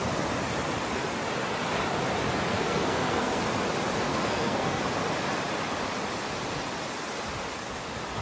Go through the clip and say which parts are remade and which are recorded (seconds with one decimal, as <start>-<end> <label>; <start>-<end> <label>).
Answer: 0.0-2.5 recorded; 2.5-3.4 remade; 3.4-4.1 recorded; 4.1-4.8 remade; 4.8-8.2 recorded